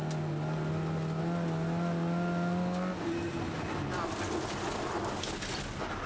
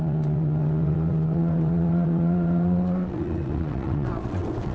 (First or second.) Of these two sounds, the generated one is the second